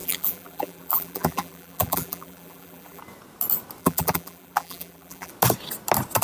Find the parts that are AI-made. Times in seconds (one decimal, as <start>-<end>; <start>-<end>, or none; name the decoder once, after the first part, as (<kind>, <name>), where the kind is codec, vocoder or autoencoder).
0.0-3.0 (vocoder, BigVGAN v2); 3.8-5.3